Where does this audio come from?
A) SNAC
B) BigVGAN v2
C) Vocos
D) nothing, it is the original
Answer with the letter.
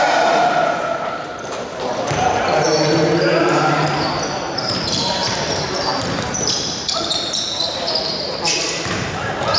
B